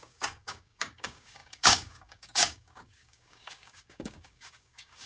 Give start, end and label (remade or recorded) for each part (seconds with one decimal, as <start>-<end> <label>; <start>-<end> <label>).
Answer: 0.0-5.1 remade